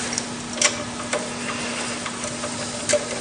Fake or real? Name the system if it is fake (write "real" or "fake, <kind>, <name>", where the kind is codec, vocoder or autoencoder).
real